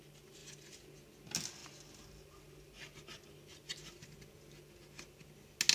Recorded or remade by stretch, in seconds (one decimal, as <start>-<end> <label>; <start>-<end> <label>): 0.0-5.7 recorded